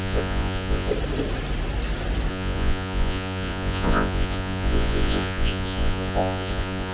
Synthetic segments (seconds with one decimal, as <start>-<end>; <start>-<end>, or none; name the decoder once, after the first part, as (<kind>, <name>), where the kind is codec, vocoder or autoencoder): 0.0-0.9 (vocoder, Vocos); 2.3-6.9